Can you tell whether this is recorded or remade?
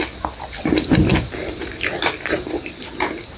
recorded